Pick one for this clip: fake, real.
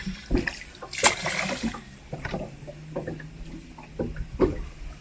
real